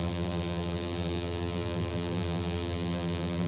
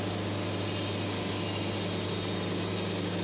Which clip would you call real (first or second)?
second